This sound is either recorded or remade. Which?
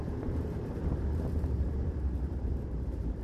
remade